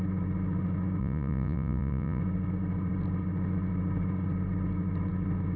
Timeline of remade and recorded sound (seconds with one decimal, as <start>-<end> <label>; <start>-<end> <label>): 0.0-1.0 recorded; 1.0-2.2 remade; 2.2-5.6 recorded